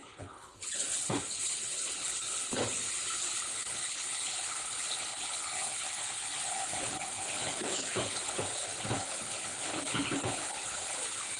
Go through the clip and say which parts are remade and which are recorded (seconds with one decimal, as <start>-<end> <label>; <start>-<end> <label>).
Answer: 0.0-11.4 remade